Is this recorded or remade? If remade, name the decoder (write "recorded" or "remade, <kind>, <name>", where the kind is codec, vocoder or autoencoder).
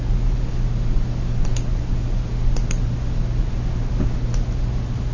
recorded